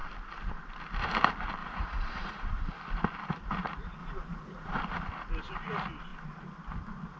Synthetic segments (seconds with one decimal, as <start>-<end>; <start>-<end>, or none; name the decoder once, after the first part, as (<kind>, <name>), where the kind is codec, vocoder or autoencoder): 1.6-2.6 (vocoder, Vocos); 4.0-4.7